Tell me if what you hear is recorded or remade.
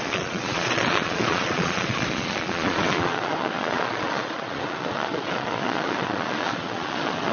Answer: remade